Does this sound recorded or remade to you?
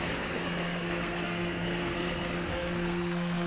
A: remade